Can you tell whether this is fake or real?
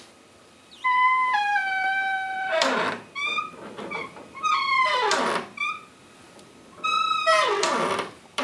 fake